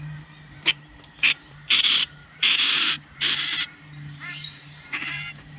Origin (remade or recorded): remade